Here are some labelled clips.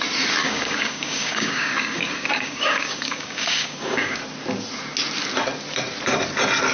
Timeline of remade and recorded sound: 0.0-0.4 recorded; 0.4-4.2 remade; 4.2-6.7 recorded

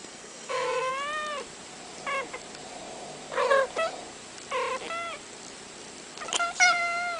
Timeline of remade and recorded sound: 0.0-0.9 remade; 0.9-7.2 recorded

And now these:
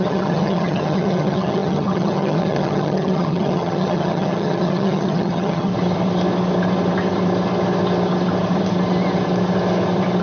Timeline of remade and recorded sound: 0.0-5.7 remade; 5.7-10.2 recorded

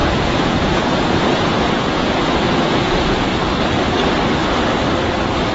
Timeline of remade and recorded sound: 0.0-3.3 remade; 3.3-5.5 recorded

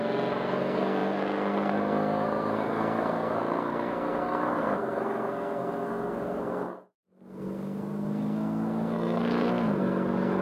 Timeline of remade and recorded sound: 0.0-10.4 remade